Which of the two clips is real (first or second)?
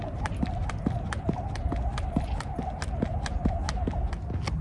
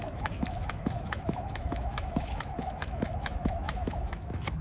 first